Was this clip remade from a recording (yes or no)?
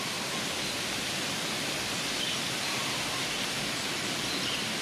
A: no